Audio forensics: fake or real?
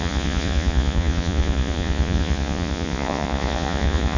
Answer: fake